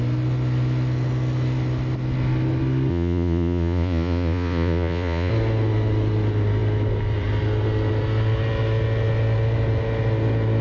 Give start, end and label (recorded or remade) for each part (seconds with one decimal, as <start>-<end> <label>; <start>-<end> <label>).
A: 0.0-2.9 recorded; 2.9-5.3 remade; 5.3-10.6 recorded